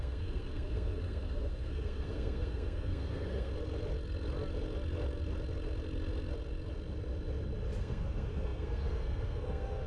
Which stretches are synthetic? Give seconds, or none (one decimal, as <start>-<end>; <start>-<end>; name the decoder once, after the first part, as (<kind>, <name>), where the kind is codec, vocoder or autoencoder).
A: 0.0-3.5 (codec, SNAC); 7.8-9.9